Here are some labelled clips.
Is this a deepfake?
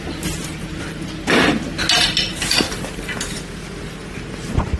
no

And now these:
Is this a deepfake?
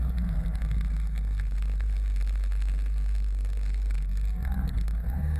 yes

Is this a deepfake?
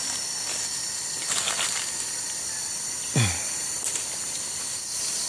no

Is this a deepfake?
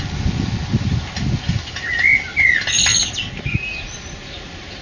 no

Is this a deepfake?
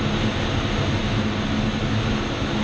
no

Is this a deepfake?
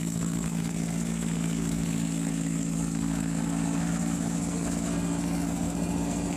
yes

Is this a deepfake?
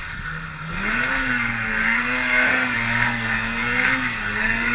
yes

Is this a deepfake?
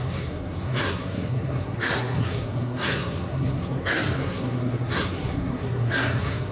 yes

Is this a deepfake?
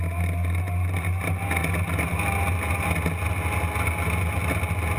no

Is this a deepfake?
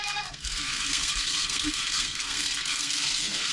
yes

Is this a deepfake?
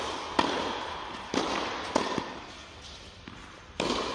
no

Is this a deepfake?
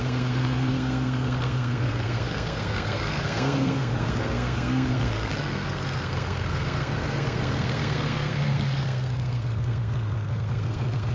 yes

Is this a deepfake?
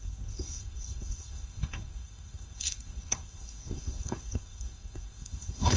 yes